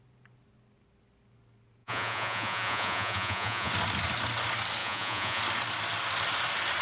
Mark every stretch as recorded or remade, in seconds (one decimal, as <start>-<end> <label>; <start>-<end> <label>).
0.0-1.8 recorded; 1.8-3.7 remade; 3.7-4.8 recorded; 4.8-5.4 remade; 5.4-6.8 recorded